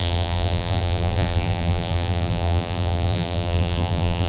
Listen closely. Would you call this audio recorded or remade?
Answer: remade